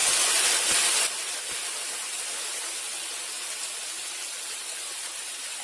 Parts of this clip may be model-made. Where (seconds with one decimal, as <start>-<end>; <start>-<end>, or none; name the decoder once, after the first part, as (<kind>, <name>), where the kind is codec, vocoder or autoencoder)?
none